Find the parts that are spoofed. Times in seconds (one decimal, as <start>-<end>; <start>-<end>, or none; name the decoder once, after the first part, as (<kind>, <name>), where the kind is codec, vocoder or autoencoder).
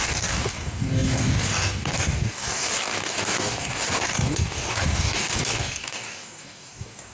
0.0-7.1 (codec, DAC)